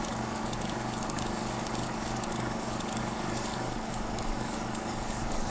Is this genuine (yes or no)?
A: no